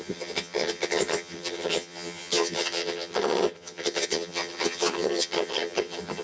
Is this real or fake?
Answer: fake